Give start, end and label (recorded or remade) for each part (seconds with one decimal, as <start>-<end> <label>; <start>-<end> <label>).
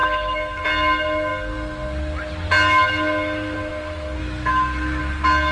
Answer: 0.0-0.6 remade; 0.6-4.2 recorded; 4.2-5.0 remade; 5.0-5.5 recorded